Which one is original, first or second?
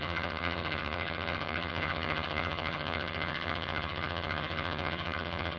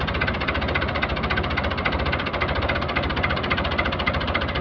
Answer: second